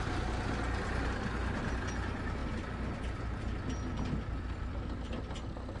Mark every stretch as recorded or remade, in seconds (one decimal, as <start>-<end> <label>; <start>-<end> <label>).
0.0-5.8 recorded